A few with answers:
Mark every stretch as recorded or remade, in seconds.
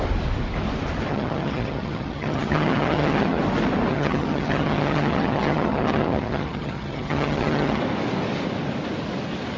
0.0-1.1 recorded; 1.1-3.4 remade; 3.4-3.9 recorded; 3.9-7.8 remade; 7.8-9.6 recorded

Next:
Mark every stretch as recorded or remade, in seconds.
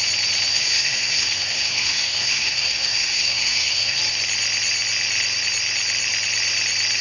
0.0-0.5 recorded; 0.5-4.0 remade; 4.0-7.0 recorded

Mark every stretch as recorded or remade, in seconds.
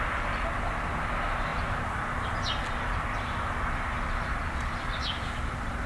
0.0-5.9 recorded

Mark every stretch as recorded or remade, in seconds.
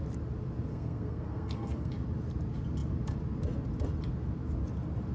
0.0-0.7 recorded; 0.7-1.9 remade; 1.9-5.1 recorded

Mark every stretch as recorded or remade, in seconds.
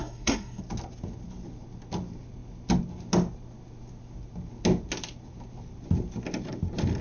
0.0-0.6 remade; 0.6-7.0 recorded